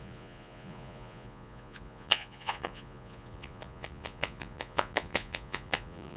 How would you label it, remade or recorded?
remade